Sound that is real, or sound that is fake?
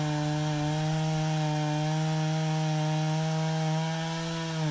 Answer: real